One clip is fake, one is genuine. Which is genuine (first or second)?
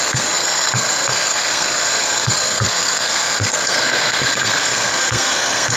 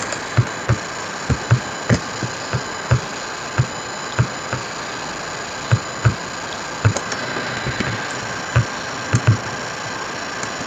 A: second